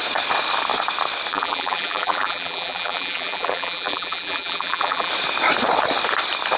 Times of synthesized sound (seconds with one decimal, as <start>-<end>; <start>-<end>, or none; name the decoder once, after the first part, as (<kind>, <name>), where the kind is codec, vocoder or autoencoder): 1.3-5.1 (vocoder, BigVGAN v2)